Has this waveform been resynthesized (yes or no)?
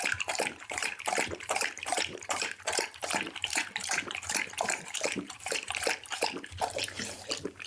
yes